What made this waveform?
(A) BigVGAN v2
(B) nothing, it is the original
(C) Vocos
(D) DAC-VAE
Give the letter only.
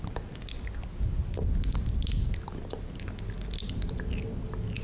B